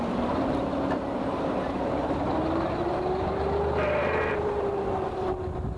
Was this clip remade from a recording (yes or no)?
yes